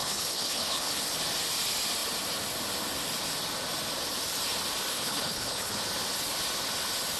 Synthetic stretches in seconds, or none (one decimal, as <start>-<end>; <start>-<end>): 0.0-1.0; 4.9-5.8